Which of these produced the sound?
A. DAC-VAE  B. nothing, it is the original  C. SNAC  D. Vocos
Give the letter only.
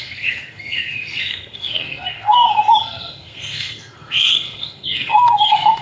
C